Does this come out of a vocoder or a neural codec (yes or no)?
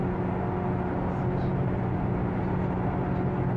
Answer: no